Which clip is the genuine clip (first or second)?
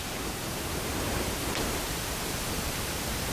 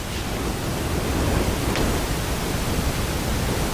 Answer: second